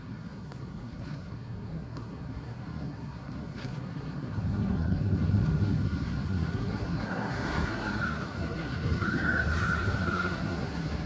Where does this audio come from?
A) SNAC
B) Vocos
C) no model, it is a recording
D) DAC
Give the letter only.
A